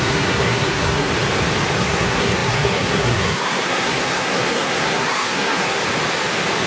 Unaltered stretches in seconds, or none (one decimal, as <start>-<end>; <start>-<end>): 1.1-1.8; 5.8-6.7